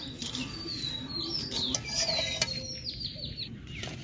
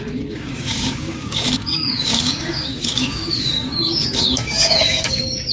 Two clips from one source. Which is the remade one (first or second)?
second